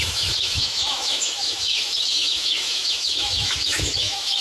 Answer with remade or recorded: remade